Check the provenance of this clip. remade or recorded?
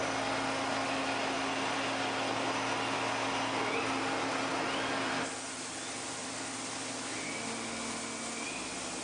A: recorded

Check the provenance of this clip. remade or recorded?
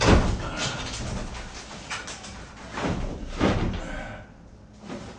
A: recorded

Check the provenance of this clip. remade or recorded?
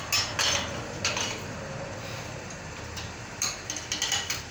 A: recorded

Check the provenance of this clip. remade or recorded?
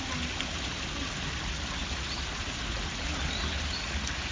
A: recorded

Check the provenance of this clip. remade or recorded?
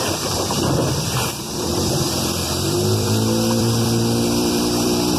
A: remade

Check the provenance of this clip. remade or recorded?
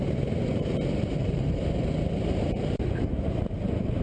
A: remade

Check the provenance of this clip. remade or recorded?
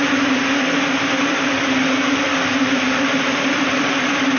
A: remade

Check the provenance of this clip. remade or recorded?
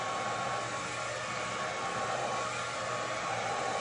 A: recorded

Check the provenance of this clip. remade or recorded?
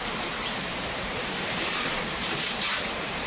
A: remade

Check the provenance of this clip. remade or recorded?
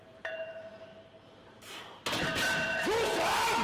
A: recorded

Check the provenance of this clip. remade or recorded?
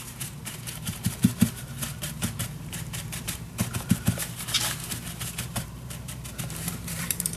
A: remade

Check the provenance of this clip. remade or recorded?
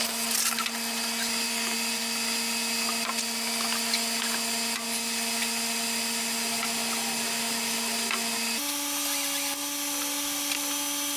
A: recorded